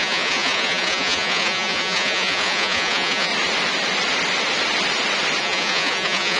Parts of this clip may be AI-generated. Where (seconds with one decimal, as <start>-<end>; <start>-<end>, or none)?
0.0-3.3; 5.4-6.4